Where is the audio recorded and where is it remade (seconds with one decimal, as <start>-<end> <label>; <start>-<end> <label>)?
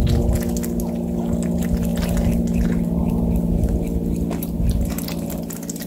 0.0-5.9 recorded